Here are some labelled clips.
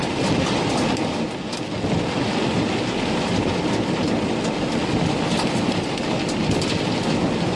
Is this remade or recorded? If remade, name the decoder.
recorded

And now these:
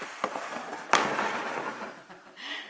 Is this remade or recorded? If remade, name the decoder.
remade, vocoder, BigVGAN v2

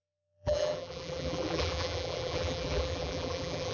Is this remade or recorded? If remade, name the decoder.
remade, vocoder, BigVGAN v2